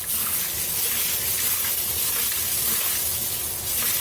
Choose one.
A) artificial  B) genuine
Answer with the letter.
B